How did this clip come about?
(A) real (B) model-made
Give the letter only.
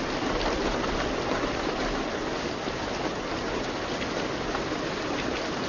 A